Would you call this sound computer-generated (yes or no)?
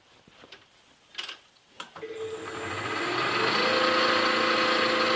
no